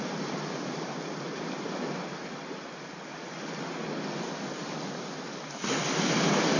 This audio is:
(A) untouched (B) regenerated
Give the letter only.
A